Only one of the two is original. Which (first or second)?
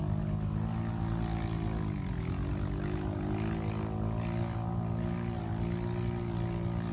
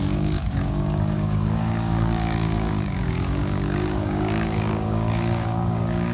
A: first